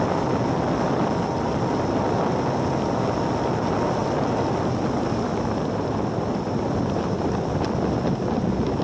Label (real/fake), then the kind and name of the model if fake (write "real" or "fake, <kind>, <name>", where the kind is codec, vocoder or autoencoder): real